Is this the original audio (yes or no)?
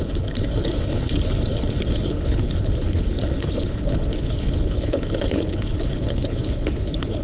no